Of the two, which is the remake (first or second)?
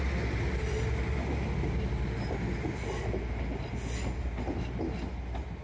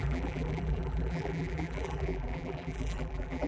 second